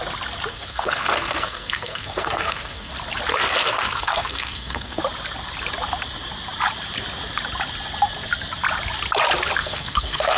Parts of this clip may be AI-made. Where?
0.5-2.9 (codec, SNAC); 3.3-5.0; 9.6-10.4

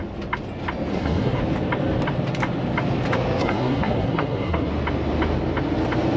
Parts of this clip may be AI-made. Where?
0.9-1.4 (codec, SNAC); 3.4-4.7

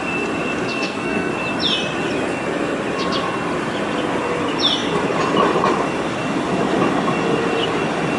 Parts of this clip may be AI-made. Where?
0.7-1.3 (codec, SNAC)

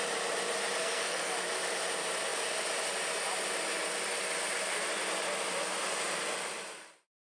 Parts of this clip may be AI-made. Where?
0.8-1.3 (codec, SNAC)

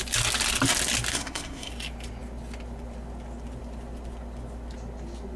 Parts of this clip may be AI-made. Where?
1.1-1.7 (codec, SNAC)

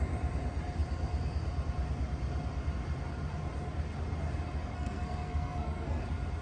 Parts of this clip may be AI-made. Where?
4.6-6.0 (codec, SNAC)